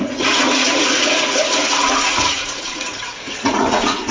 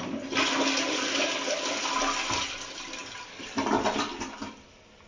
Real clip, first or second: second